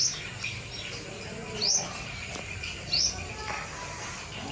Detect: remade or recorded recorded